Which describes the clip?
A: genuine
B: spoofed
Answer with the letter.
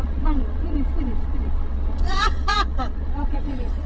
B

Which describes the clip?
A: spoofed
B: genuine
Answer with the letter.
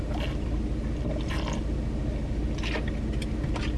B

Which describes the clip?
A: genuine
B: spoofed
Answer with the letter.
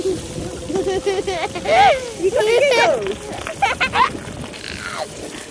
A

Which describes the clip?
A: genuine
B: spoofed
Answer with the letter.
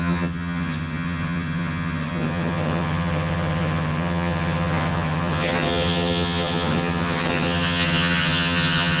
B